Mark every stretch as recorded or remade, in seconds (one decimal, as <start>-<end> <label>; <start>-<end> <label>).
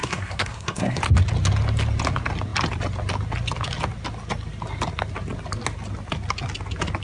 0.0-1.0 remade; 1.0-7.0 recorded